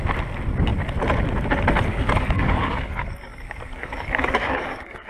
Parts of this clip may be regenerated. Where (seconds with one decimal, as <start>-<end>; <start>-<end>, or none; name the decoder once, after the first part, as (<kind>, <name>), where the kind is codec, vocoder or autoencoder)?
1.9-5.1 (codec, DAC)